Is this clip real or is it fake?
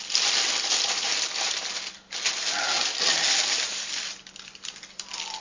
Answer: real